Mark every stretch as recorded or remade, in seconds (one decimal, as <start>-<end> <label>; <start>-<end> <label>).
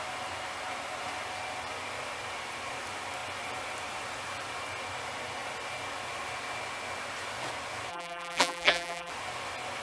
0.0-7.9 recorded; 7.9-9.1 remade; 9.1-9.8 recorded